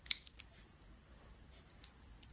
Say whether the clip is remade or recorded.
recorded